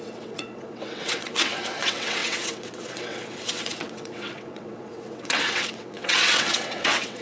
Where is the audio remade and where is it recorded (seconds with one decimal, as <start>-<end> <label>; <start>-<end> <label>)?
0.0-7.2 remade

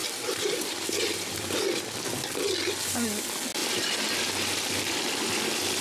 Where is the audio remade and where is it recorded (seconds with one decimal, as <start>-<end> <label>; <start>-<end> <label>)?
0.0-2.0 remade; 2.0-5.8 recorded

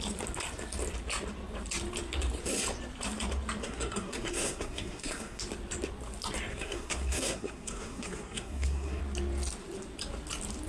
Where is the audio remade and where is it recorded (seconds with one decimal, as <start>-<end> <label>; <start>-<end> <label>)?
0.0-3.6 recorded; 3.6-5.4 remade; 5.4-6.5 recorded; 6.5-9.0 remade; 9.0-10.7 recorded

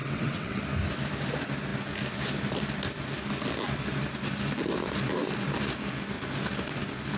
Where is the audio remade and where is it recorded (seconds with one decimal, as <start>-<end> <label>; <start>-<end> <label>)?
0.0-0.6 remade; 0.6-7.2 recorded

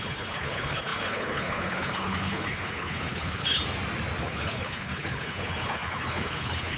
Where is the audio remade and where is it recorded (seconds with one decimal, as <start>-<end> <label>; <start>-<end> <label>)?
0.0-3.6 remade; 3.6-4.2 recorded; 4.2-6.8 remade